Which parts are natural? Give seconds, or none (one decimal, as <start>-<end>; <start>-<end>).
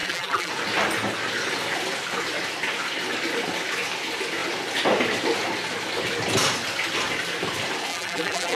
0.5-7.9